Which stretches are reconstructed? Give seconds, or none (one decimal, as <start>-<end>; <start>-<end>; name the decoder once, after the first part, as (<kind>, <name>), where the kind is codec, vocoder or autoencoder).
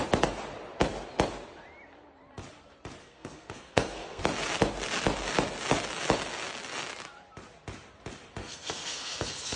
3.0-4.2 (codec, SNAC); 8.4-9.6